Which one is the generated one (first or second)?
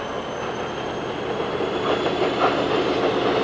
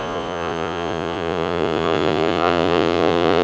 second